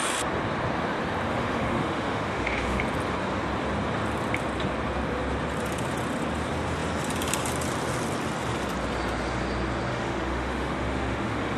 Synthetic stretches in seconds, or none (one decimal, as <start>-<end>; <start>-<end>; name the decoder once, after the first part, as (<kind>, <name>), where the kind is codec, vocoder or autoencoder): 1.3-2.8 (autoencoder, DAC-VAE); 9.9-11.6